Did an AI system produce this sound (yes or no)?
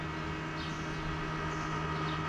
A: no